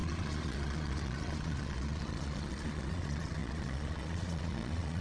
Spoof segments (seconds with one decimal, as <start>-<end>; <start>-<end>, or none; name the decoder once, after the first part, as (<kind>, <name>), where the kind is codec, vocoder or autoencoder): 0.0-5.0 (vocoder, Vocos)